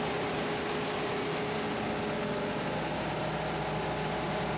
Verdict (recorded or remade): recorded